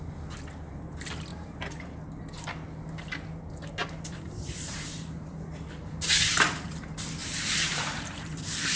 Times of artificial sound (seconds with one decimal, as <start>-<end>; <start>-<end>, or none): 1.3-1.8; 3.8-5.3; 7.2-8.4